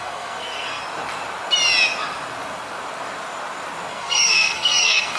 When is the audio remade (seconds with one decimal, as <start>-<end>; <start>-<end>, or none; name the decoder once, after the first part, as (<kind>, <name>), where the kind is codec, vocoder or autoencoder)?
0.0-0.8 (codec, SNAC); 3.9-5.2